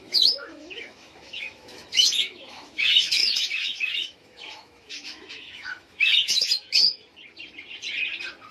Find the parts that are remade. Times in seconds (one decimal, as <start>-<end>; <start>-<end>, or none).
0.0-7.0